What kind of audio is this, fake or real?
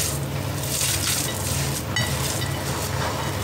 real